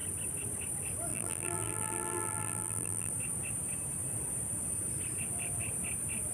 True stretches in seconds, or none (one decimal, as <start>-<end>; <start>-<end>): 0.0-1.1; 3.1-6.3